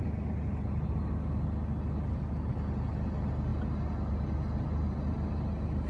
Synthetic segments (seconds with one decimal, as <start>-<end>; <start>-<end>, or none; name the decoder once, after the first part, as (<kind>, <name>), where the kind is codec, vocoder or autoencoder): none